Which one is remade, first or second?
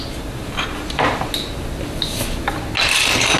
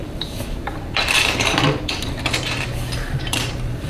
second